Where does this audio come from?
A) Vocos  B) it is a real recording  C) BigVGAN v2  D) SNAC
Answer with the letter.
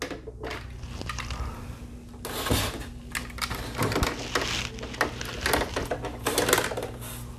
B